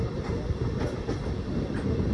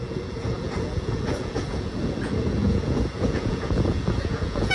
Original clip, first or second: first